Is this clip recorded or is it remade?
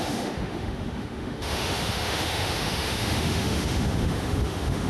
remade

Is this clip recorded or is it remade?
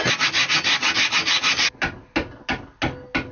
recorded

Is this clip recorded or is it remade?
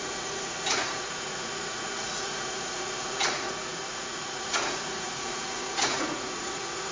remade